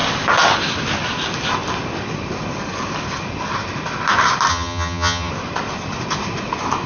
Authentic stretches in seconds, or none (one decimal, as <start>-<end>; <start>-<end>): 0.0-4.5; 5.3-6.9